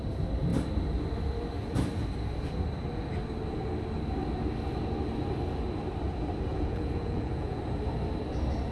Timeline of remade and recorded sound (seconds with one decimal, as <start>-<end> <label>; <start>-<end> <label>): 0.0-6.5 recorded; 6.5-7.6 remade; 7.6-8.7 recorded